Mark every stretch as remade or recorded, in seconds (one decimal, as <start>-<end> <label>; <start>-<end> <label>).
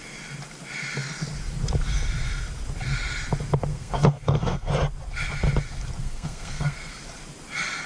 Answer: 0.0-3.7 recorded; 3.7-4.7 remade; 4.7-6.0 recorded; 6.0-6.9 remade; 6.9-7.9 recorded